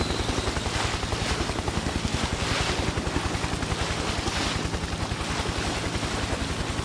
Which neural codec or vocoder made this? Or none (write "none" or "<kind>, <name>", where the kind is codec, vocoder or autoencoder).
none